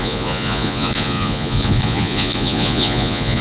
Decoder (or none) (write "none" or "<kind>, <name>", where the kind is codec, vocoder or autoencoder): vocoder, Vocos